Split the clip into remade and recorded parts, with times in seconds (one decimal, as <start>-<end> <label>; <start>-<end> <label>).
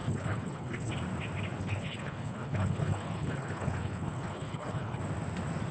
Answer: 0.0-0.9 remade; 0.9-1.6 recorded; 1.6-5.0 remade; 5.0-5.7 recorded